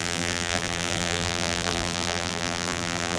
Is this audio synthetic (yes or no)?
yes